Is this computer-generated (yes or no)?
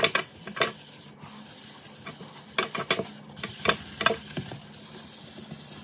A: no